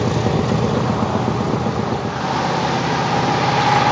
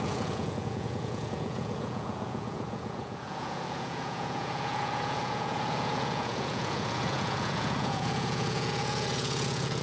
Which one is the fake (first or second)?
second